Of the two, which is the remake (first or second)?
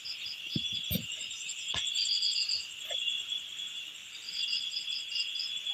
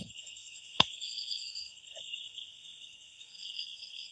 second